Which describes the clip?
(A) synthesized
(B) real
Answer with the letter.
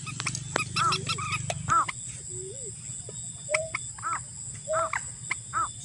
B